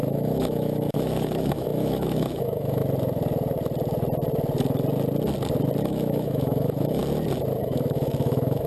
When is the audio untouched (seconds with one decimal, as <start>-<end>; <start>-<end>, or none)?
2.8-5.8; 7.0-7.6